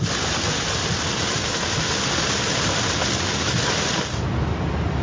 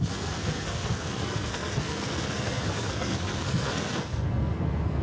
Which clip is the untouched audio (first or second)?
first